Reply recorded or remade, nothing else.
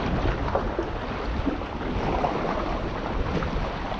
recorded